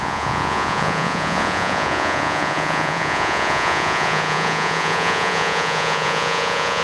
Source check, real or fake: fake